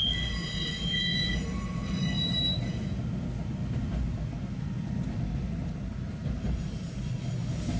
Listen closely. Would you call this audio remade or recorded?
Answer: recorded